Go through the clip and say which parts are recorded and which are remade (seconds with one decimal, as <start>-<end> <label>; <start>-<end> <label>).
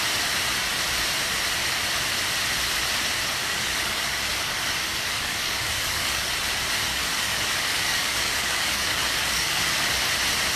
0.0-3.4 recorded; 3.4-6.3 remade; 6.3-6.9 recorded; 6.9-9.9 remade; 9.9-10.6 recorded